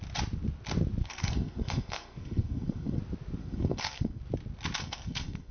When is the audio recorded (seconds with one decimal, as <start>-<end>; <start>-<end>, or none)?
0.0-1.0; 3.0-3.4; 4.2-4.8